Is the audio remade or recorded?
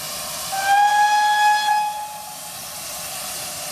recorded